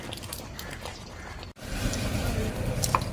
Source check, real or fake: real